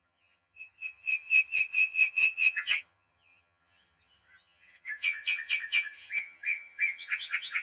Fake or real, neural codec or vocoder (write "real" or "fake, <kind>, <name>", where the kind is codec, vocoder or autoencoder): fake, vocoder, HiFi-GAN